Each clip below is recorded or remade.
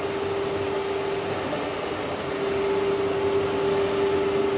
recorded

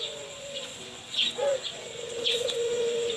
remade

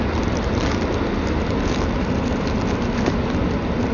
recorded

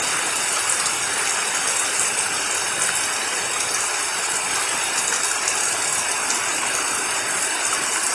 recorded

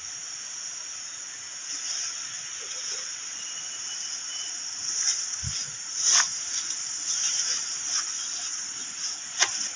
remade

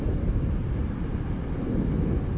recorded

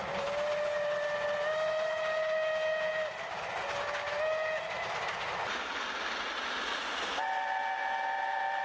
recorded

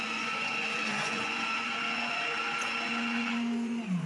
remade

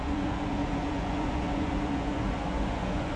remade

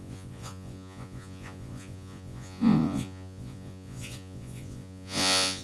remade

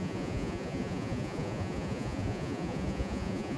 remade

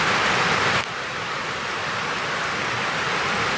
recorded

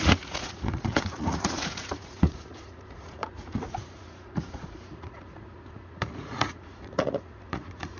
remade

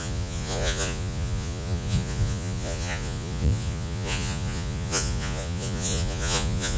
remade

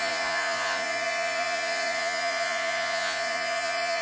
remade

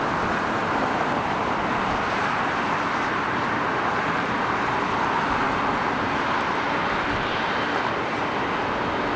recorded